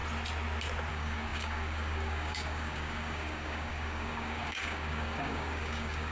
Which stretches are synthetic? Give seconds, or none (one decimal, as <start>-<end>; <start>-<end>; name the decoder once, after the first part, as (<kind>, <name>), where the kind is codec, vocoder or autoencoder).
0.9-6.1 (codec, DAC)